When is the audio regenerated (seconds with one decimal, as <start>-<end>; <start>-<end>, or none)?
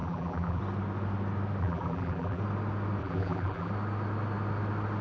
0.0-0.6; 1.6-2.4; 3.0-3.7